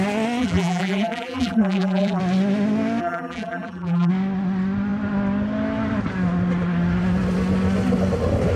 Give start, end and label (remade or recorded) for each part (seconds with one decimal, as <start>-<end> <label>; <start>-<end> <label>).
0.0-0.4 recorded; 0.4-2.2 remade; 2.2-3.0 recorded; 3.0-4.1 remade; 4.1-8.6 recorded